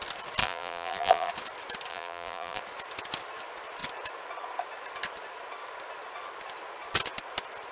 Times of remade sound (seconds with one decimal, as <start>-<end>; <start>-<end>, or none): 0.4-1.3; 1.9-2.6